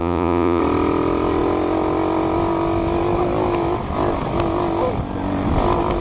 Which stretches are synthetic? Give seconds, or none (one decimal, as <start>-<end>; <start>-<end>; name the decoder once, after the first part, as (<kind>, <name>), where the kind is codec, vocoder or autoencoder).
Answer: 0.0-0.6 (vocoder, Vocos)

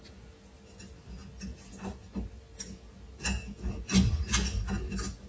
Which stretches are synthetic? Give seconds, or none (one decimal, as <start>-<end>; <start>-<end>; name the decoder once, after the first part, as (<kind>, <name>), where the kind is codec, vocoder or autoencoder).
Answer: none

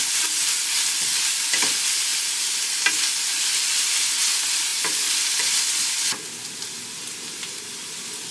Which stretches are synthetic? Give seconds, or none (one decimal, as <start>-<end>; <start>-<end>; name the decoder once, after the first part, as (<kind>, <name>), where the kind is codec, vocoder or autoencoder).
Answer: none

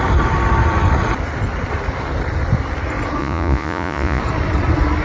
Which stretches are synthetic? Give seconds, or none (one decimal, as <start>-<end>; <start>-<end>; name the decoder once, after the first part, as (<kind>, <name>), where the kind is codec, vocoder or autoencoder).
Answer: 3.2-4.2 (vocoder, Vocos)

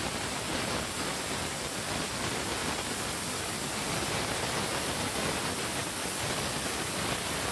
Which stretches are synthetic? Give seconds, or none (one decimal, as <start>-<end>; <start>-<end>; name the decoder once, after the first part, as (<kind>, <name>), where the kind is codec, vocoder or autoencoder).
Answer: none

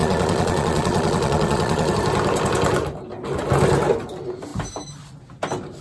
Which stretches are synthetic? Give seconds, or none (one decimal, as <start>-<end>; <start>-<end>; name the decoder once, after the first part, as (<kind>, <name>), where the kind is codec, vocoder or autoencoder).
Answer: 0.0-1.9 (vocoder, Vocos)

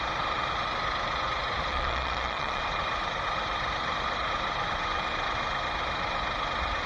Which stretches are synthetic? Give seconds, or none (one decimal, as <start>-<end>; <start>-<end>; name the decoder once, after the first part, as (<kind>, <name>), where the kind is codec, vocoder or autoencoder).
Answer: 1.7-2.6 (vocoder, Vocos)